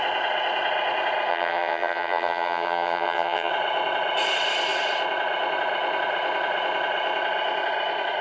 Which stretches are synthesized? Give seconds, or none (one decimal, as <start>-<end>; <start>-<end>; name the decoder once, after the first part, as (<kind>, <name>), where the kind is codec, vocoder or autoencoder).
1.3-3.5 (vocoder, HiFi-GAN)